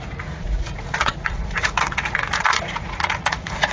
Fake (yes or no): yes